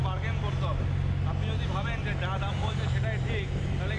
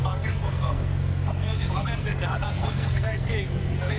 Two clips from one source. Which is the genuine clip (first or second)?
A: first